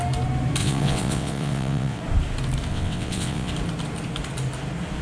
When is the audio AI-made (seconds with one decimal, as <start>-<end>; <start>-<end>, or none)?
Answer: 0.6-2.0; 2.7-3.5